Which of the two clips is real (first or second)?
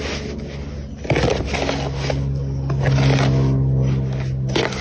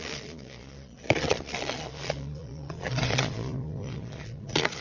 first